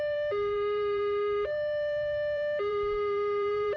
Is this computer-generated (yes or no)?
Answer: yes